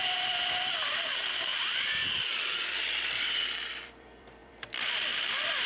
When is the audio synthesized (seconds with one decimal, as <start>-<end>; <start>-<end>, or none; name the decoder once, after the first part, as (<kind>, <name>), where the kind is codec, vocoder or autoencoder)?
0.0-1.5 (vocoder, BigVGAN v2); 2.3-5.7